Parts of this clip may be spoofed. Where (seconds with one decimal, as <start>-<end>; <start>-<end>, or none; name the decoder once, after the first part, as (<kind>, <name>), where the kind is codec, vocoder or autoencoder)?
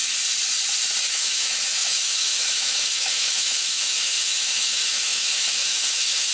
1.1-6.3 (autoencoder, DAC-VAE)